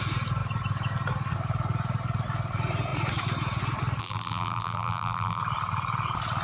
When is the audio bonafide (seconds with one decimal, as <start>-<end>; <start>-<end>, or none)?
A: 0.0-4.0; 5.4-6.4